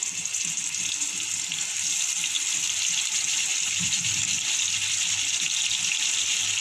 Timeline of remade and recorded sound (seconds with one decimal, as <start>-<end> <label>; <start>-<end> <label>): 0.0-6.6 recorded